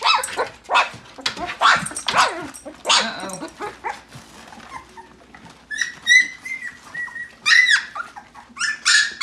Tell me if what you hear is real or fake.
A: real